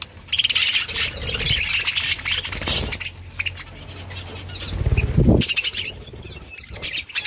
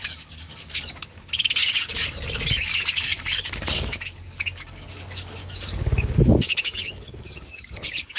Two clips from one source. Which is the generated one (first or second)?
second